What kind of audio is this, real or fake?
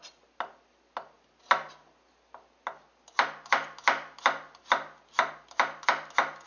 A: real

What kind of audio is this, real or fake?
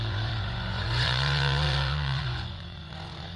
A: fake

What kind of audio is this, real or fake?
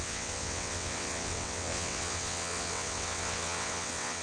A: fake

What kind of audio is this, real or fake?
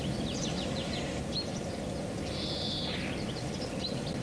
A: real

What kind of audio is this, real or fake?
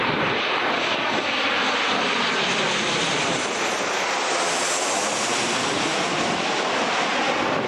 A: fake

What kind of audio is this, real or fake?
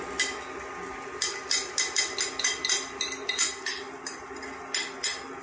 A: real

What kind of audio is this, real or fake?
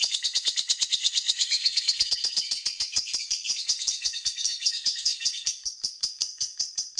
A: fake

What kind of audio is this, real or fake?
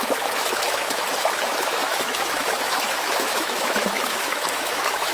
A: fake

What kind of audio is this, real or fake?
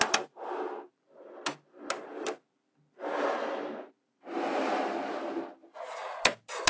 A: real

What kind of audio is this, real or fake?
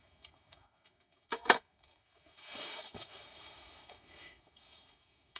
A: fake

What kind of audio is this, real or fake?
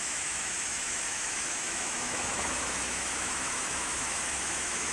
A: fake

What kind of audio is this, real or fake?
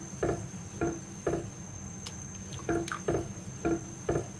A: real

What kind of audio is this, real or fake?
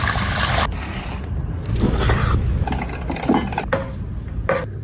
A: real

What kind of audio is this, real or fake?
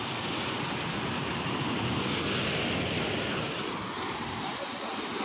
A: real